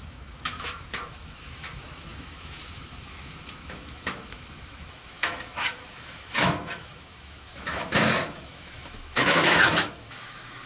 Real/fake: fake